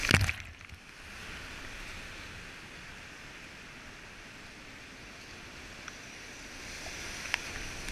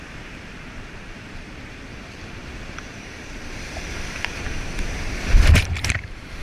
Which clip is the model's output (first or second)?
second